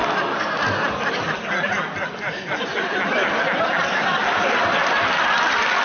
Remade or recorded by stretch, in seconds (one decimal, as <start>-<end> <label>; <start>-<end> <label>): 0.0-5.8 recorded